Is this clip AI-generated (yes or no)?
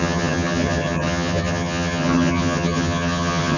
yes